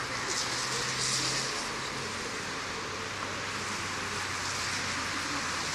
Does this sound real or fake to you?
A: real